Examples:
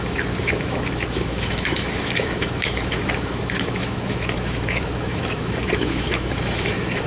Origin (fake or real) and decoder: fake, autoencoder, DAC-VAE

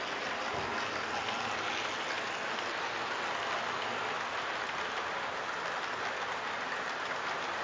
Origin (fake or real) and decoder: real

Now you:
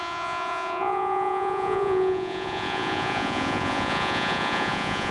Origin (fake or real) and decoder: fake, vocoder, Vocos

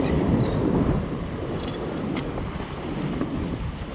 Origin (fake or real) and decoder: real